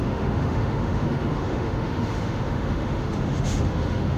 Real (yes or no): no